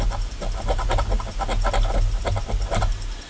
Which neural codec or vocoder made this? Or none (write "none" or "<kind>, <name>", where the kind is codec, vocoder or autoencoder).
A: none